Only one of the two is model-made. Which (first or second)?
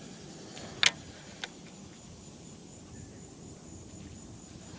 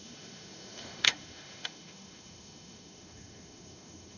second